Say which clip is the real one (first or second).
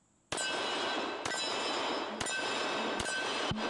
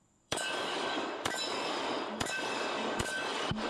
first